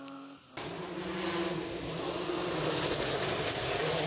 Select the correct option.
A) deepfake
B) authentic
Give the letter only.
B